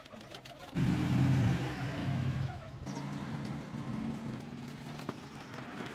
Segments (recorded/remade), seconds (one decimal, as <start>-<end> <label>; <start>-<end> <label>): 0.0-2.0 recorded; 2.0-2.7 remade; 2.7-5.9 recorded